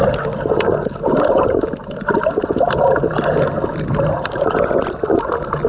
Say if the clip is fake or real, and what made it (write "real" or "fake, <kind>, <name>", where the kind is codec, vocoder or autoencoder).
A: real